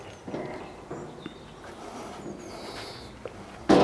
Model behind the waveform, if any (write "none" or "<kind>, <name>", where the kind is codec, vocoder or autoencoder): none